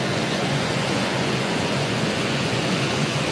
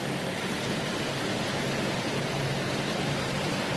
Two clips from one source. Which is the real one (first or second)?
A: second